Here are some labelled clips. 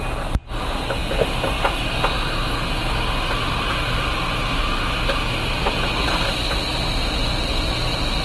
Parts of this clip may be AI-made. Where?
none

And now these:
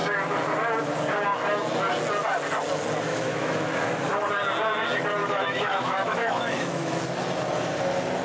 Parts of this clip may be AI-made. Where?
3.1-4.3 (autoencoder, DAC-VAE); 5.2-7.0

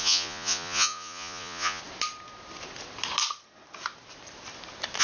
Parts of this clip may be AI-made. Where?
0.0-1.8 (vocoder, Vocos)

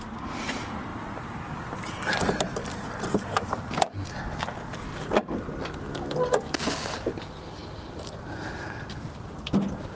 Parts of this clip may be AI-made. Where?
0.9-2.0 (vocoder, BigVGAN v2); 2.6-4.2; 7.6-8.2